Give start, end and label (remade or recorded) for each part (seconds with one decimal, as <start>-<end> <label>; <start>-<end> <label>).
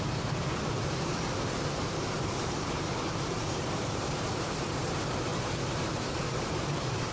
0.0-7.1 remade